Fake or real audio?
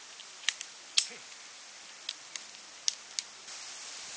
real